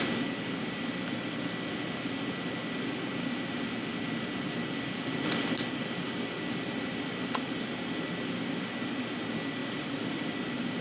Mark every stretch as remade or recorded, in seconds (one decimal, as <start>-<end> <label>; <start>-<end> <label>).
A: 0.0-9.6 recorded; 9.6-10.2 remade; 10.2-10.8 recorded